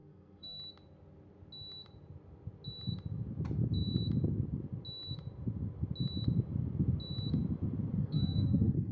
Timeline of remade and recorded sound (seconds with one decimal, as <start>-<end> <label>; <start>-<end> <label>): 0.0-0.6 remade; 0.6-8.0 recorded; 8.0-8.9 remade